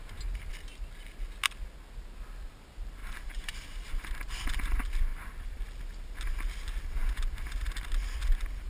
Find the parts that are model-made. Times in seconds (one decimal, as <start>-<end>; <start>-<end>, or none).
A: 0.0-0.5; 3.0-3.5; 5.1-5.6